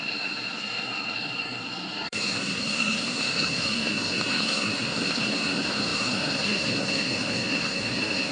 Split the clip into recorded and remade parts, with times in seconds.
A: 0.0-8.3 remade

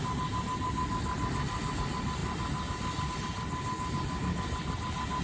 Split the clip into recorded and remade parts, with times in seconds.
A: 0.0-5.2 recorded

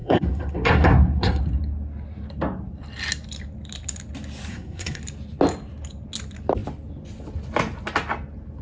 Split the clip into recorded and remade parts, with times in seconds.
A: 0.0-1.4 remade; 1.4-4.5 recorded; 4.5-5.0 remade; 5.0-8.6 recorded

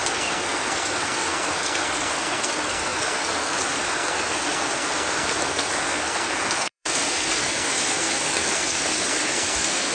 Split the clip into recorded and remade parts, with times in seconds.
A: 0.0-9.9 remade

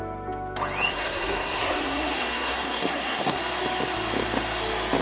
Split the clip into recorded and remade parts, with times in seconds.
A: 0.0-0.9 recorded; 0.9-3.4 remade; 3.4-5.0 recorded

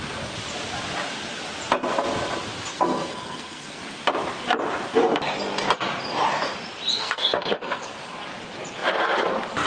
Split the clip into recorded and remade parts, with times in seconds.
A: 0.0-2.7 recorded; 2.7-3.8 remade; 3.8-6.9 recorded; 6.9-8.0 remade; 8.0-9.7 recorded